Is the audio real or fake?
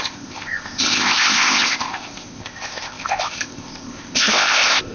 fake